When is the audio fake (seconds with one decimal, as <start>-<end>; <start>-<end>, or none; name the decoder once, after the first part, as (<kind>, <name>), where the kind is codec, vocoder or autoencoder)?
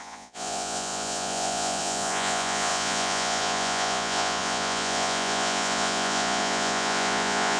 0.0-7.6 (vocoder, Vocos)